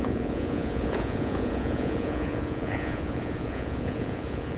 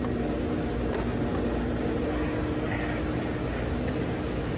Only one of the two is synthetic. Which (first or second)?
first